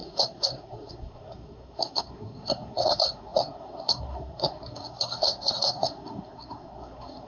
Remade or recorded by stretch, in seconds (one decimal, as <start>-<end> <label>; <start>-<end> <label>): 0.0-7.3 remade